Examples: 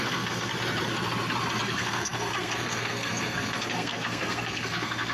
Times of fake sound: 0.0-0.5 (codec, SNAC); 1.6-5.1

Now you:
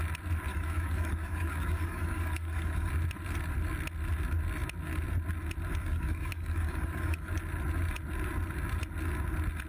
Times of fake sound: 0.5-2.9 (codec, DAC); 5.8-7.3

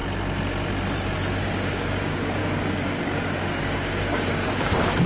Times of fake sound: 1.4-5.1 (codec, DAC)

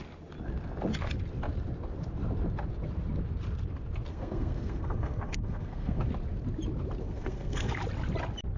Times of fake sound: 4.1-6.1 (codec, SNAC); 7.0-7.7